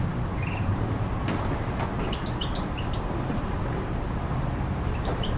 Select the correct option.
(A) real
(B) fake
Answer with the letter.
B